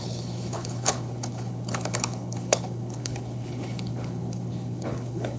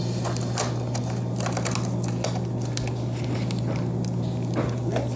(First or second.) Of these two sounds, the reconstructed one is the first